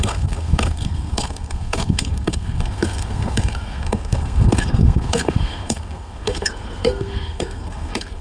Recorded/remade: remade